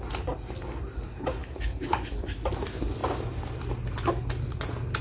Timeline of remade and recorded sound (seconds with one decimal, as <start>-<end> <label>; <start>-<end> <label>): 0.0-1.4 recorded; 1.4-2.5 remade; 2.5-5.0 recorded